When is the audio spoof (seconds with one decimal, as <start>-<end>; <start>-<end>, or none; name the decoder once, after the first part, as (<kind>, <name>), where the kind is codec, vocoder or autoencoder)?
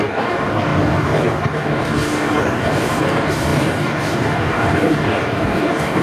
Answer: 0.0-6.0 (codec, DAC)